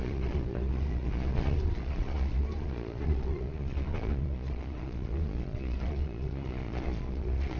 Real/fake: fake